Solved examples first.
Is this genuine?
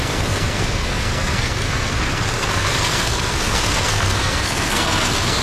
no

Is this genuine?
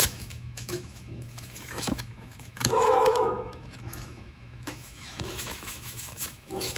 no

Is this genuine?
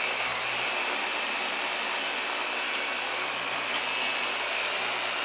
yes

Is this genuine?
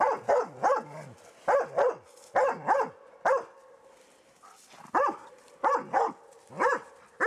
yes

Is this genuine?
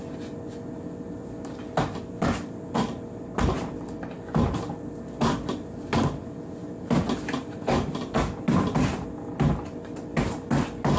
yes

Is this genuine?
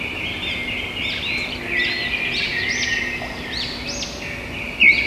yes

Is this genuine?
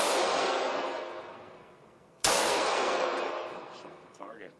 no